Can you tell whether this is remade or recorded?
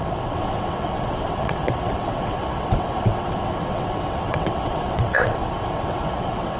remade